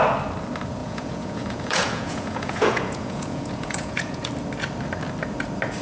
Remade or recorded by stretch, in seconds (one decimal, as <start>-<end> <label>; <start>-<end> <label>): 0.0-0.8 recorded; 0.8-4.3 remade; 4.3-5.8 recorded